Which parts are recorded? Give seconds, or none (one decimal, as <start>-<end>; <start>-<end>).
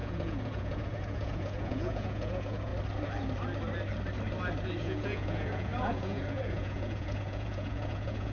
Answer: 2.7-4.8